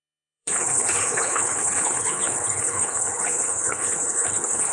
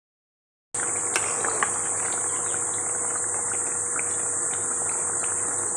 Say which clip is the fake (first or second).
first